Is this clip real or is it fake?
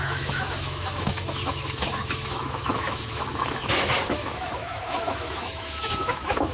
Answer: fake